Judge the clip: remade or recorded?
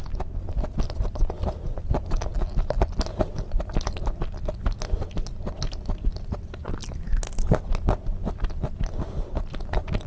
recorded